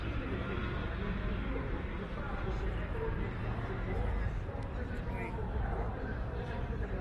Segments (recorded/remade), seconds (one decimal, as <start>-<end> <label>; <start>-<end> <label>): 0.0-0.8 remade; 0.8-2.6 recorded; 2.6-3.4 remade; 3.4-5.3 recorded; 5.3-7.0 remade